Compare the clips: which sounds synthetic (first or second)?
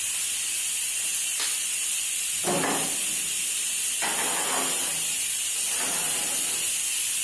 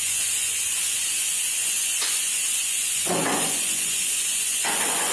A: second